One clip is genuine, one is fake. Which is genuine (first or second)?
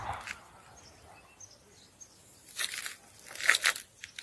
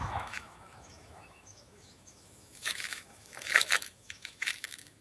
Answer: first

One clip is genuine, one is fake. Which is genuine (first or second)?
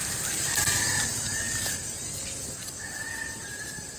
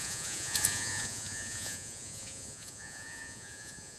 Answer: first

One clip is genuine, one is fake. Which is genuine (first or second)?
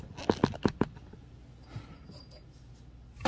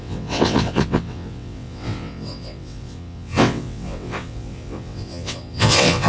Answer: first